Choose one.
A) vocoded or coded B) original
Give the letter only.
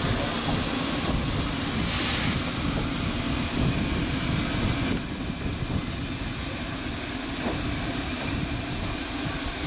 B